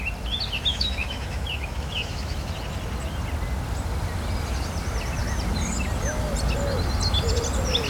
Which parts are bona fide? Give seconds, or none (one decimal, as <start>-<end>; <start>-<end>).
0.0-0.7; 2.5-7.9